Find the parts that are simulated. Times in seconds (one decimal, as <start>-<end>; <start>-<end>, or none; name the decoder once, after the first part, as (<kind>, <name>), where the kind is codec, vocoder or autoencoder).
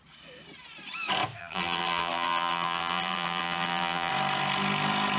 1.4-4.1 (vocoder, BigVGAN v2)